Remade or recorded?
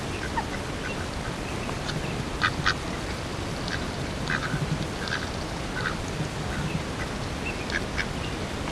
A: recorded